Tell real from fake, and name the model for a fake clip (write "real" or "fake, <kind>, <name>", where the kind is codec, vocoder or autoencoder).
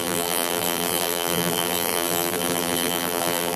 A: fake, vocoder, BigVGAN v2